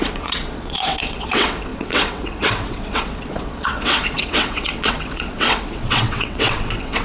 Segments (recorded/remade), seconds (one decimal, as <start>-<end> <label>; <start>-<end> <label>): 0.0-7.0 remade